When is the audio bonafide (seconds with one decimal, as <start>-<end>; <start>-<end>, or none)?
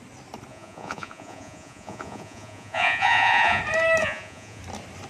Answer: 0.0-0.5; 3.6-4.0; 4.6-5.1